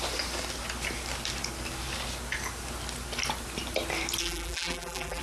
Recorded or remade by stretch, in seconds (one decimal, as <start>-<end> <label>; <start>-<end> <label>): 0.0-4.2 recorded; 4.2-5.2 remade